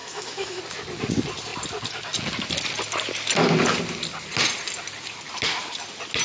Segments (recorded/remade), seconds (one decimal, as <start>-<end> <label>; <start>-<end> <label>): 0.0-0.6 remade; 0.6-6.2 recorded